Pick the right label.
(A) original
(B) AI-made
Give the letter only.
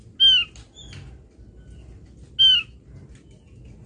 A